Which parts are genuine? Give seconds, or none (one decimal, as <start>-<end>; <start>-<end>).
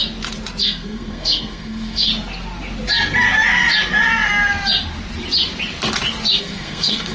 0.0-0.6; 2.1-6.4